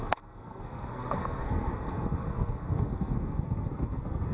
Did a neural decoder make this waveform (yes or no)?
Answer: yes